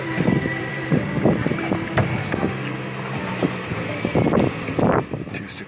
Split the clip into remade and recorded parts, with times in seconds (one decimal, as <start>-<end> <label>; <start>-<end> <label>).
0.0-1.4 remade; 1.4-4.8 recorded; 4.8-5.7 remade

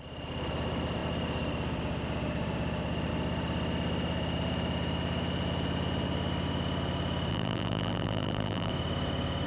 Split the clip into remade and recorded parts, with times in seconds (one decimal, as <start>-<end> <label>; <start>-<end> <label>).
0.0-7.3 recorded; 7.3-8.7 remade; 8.7-9.5 recorded

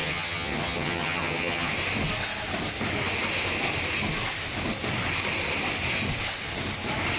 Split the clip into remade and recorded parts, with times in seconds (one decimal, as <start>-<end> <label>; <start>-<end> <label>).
0.0-1.7 remade; 1.7-7.2 recorded